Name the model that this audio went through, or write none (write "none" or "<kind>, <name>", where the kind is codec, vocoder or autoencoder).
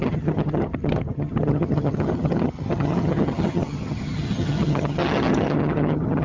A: vocoder, HiFi-GAN